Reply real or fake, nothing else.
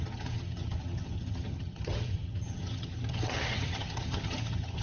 fake